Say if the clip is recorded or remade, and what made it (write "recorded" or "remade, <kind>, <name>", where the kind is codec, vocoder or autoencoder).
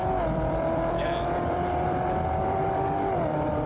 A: remade, vocoder, BigVGAN v2